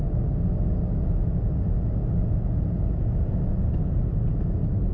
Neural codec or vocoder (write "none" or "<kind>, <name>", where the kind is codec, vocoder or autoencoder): none